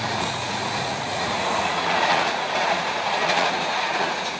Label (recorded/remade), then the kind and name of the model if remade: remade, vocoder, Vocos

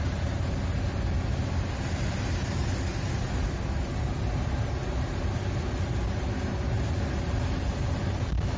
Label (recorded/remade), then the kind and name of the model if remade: recorded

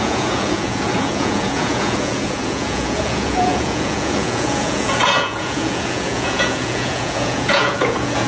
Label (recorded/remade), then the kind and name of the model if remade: remade, vocoder, Vocos